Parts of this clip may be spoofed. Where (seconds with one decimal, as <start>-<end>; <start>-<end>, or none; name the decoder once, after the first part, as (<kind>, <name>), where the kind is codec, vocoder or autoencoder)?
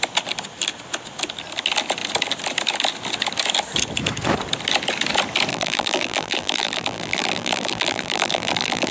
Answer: 5.5-8.9 (vocoder, BigVGAN v2)